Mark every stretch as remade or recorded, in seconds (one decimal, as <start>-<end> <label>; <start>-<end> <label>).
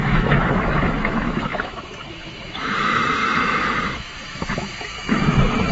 0.0-5.7 remade